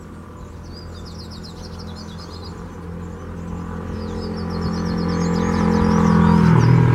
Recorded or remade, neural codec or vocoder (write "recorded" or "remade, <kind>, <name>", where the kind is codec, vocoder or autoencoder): recorded